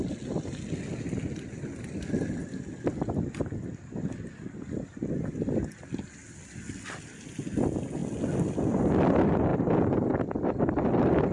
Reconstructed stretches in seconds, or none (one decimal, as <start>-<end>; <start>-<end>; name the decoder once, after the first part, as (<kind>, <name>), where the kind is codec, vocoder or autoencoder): none